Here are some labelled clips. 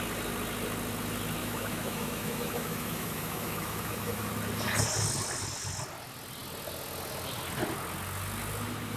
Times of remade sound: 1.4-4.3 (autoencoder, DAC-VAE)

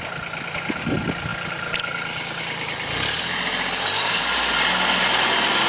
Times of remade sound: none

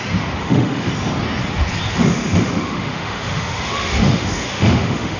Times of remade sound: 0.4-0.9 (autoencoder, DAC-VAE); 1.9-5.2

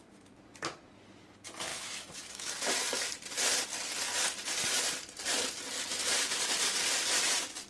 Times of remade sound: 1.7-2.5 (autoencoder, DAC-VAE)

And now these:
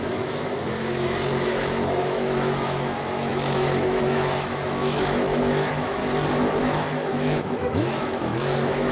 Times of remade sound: 0.0-6.0 (autoencoder, DAC-VAE); 6.6-8.9

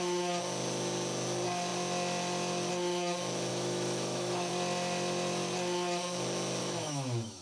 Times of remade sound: 3.5-4.5 (autoencoder, DAC-VAE); 6.6-7.4

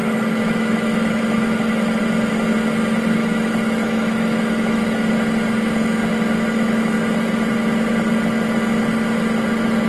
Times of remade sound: 0.0-2.0 (autoencoder, DAC-VAE); 3.2-5.1